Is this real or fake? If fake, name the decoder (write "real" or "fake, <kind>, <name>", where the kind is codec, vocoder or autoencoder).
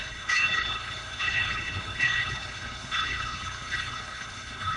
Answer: fake, codec, HILCodec